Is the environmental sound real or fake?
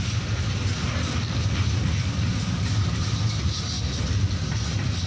real